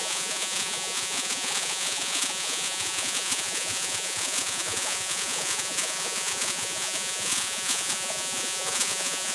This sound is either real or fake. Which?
fake